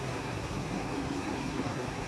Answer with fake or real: fake